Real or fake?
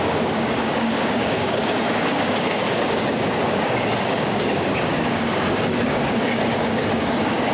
fake